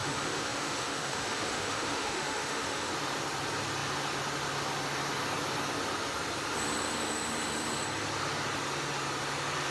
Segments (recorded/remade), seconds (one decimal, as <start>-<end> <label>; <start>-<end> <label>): 0.0-2.9 remade; 2.9-9.7 recorded